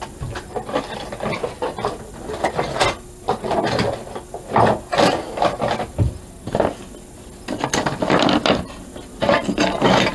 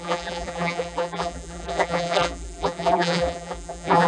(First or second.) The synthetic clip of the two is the second